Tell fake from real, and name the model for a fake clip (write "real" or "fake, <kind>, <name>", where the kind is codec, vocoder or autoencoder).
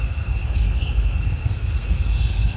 fake, codec, SNAC